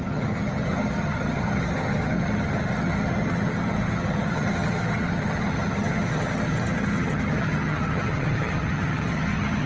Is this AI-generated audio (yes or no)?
yes